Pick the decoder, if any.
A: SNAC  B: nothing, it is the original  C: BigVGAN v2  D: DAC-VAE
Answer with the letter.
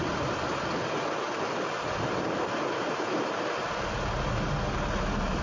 B